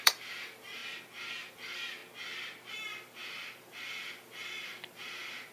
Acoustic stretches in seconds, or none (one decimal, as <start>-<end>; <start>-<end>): 0.8-1.5; 2.0-2.7